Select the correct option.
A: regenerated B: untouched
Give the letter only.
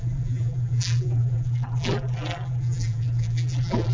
A